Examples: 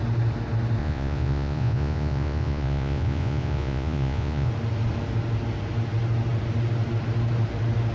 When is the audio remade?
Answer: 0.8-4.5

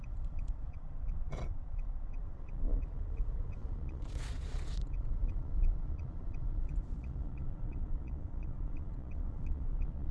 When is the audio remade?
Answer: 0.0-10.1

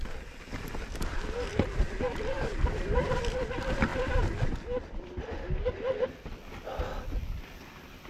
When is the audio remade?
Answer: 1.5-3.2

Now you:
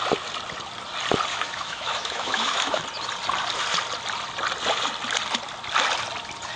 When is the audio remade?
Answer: 1.3-2.8

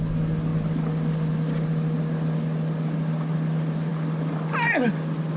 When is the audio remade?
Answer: none

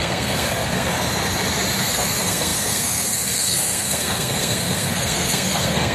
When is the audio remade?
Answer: 0.0-0.9; 1.8-5.9

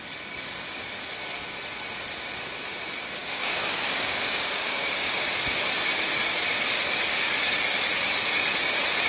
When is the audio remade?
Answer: 3.2-5.3